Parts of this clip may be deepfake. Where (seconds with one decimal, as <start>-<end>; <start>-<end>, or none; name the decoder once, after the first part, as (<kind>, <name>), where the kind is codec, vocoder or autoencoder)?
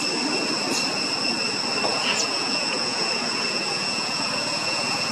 1.9-5.1 (vocoder, Vocos)